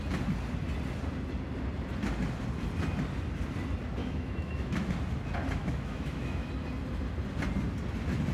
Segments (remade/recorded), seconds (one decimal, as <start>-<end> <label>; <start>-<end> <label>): 0.0-4.0 recorded; 4.0-4.9 remade; 4.9-5.6 recorded; 5.6-6.5 remade; 6.5-8.3 recorded

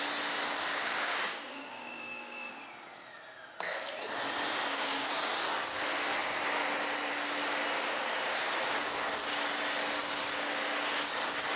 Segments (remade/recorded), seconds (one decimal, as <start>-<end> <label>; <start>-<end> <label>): 0.0-0.7 recorded; 0.7-2.5 remade; 2.5-4.7 recorded; 4.7-5.3 remade; 5.3-11.6 recorded

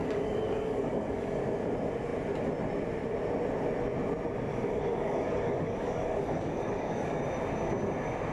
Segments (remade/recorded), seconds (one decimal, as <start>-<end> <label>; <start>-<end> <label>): 0.0-1.4 remade; 1.4-4.5 recorded; 4.5-7.2 remade; 7.2-8.3 recorded

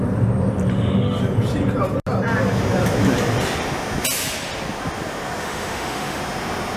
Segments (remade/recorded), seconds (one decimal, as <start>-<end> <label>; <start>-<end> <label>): 0.0-0.7 recorded; 0.7-1.2 remade; 1.2-5.4 recorded; 5.4-6.2 remade; 6.2-6.8 recorded

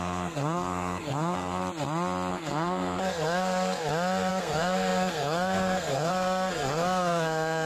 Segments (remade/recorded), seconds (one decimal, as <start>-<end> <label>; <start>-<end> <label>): 0.0-1.6 remade; 1.6-2.3 recorded; 2.3-3.8 remade; 3.8-4.3 recorded; 4.3-7.7 remade

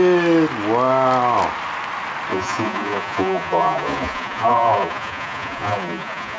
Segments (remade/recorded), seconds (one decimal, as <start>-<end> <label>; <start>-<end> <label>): 0.0-2.3 recorded; 2.3-6.4 remade

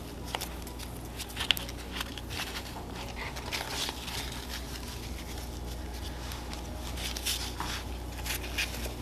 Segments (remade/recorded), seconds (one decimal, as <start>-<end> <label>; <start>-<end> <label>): 0.0-2.1 recorded; 2.1-3.2 remade; 3.2-9.0 recorded